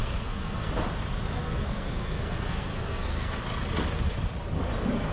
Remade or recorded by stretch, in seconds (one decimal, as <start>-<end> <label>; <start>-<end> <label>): 0.0-0.7 remade; 0.7-1.4 recorded; 1.4-3.4 remade; 3.4-5.1 recorded